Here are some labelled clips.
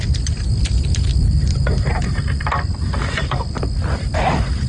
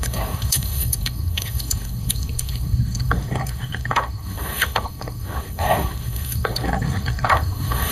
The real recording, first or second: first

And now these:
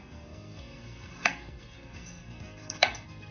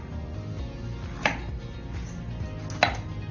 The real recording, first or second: second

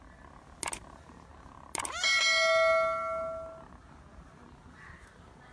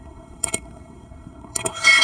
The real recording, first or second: first